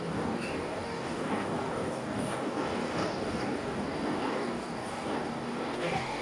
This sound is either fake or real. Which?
fake